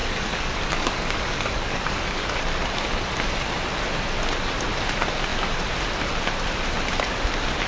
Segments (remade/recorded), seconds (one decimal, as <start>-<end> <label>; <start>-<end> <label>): 0.0-2.4 remade; 2.4-7.7 recorded